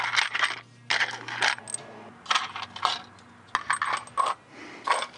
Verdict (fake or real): real